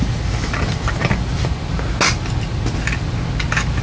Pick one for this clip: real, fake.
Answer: real